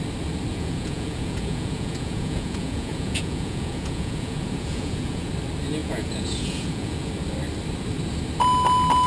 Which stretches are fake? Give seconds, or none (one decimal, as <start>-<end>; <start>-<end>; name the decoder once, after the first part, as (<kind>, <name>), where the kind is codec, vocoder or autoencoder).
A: 0.5-5.3 (vocoder, Vocos); 5.8-7.1